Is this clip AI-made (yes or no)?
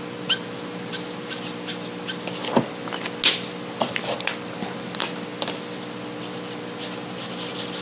no